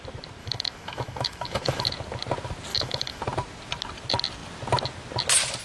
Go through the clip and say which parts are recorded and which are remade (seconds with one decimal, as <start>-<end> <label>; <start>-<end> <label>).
0.0-0.4 recorded; 0.4-1.9 remade; 1.9-2.7 recorded; 2.7-3.2 remade; 3.2-5.6 recorded